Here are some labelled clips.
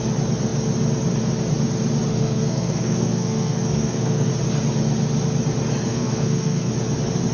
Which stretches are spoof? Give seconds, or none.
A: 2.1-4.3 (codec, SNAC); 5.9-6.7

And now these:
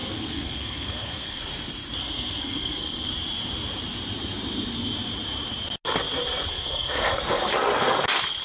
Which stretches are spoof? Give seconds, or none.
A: 0.0-1.4 (codec, SNAC); 2.0-3.1; 6.5-7.5

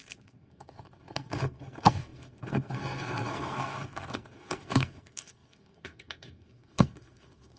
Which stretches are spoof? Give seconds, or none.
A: 0.0-7.6 (codec, SNAC)